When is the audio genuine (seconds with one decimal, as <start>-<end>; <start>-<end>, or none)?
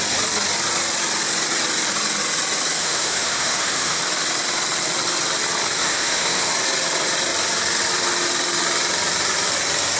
0.0-2.8; 4.0-5.8; 6.5-10.0